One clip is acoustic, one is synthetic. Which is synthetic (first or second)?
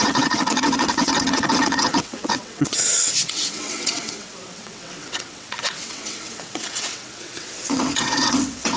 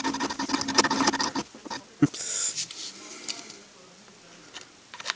first